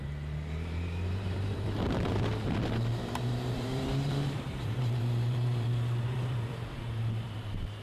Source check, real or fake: fake